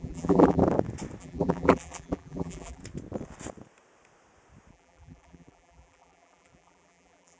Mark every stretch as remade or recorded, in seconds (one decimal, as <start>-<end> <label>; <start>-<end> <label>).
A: 0.0-0.6 remade; 0.6-1.2 recorded; 1.2-2.8 remade; 2.8-4.7 recorded; 4.7-7.4 remade